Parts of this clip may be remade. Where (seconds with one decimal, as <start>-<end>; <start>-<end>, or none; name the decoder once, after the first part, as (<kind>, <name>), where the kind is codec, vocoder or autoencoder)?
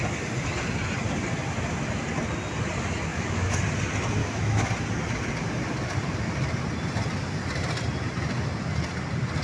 3.1-3.6 (autoencoder, DAC-VAE); 4.2-4.7